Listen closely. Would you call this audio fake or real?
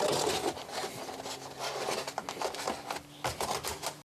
real